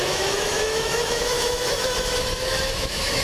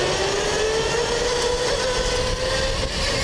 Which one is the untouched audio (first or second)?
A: second